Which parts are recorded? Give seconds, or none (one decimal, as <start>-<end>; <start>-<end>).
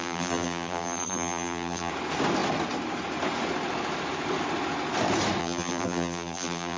1.9-5.4